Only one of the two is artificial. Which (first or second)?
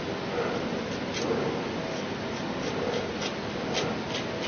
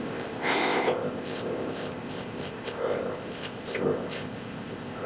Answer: second